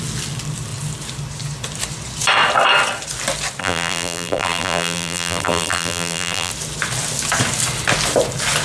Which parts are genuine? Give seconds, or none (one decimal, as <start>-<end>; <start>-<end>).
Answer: 0.0-3.6; 6.5-8.6

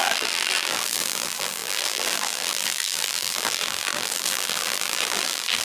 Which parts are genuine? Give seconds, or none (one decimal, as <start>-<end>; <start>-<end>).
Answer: none

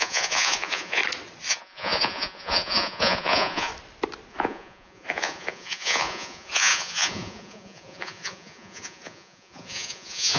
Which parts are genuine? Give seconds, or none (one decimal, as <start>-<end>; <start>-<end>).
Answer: 1.0-1.5; 3.7-4.3

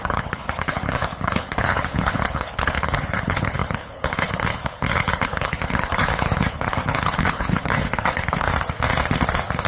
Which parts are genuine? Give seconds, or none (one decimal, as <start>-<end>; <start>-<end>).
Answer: 8.5-9.7

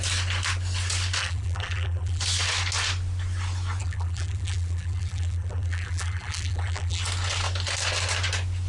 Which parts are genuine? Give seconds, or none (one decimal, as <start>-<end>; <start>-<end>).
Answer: 0.0-1.2; 2.2-3.8; 7.0-8.7